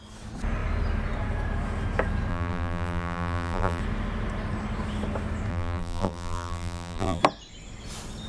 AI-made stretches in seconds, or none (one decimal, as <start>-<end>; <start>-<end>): 2.3-3.8; 5.5-7.2